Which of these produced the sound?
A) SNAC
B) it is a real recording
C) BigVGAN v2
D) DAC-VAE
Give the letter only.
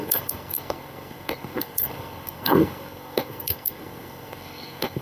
A